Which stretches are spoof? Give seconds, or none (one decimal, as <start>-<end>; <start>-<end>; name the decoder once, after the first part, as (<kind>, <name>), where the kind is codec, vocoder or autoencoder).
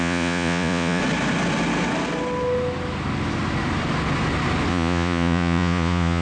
0.0-1.0 (vocoder, Vocos); 4.7-6.2